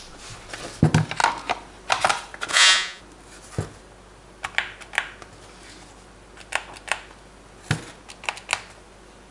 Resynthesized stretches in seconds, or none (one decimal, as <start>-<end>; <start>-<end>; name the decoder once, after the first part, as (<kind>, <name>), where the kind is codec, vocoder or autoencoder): 2.5-3.0 (vocoder, Vocos)

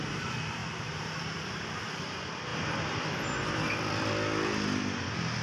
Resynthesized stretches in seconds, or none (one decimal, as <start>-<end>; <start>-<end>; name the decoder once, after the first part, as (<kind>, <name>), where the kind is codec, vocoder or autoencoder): 0.6-1.6 (vocoder, BigVGAN v2)

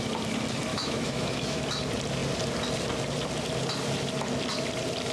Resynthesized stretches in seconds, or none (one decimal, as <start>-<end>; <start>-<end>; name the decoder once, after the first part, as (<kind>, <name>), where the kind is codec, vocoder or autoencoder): 0.7-1.6 (autoencoder, DAC-VAE)

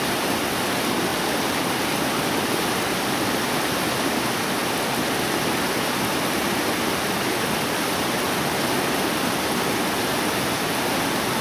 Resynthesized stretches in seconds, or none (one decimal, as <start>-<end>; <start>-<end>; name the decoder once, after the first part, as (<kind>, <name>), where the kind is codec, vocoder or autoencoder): none

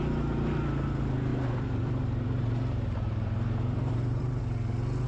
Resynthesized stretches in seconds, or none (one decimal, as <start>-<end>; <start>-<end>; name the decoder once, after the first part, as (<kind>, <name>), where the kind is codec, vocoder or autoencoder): 1.3-4.4 (vocoder, BigVGAN v2)

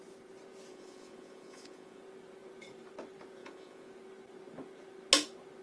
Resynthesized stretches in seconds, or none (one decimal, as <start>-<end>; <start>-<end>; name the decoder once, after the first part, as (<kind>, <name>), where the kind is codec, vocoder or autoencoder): 0.7-2.0 (vocoder, Vocos); 3.4-3.9

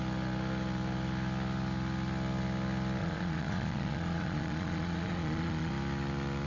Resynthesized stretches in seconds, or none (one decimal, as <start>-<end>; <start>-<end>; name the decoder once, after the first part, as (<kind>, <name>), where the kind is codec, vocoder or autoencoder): 3.0-5.7 (vocoder, Vocos)

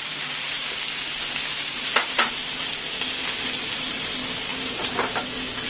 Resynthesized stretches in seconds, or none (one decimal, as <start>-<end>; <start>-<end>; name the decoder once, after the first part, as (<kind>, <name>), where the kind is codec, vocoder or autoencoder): 0.0-0.7 (vocoder, BigVGAN v2); 1.7-2.7; 4.5-5.2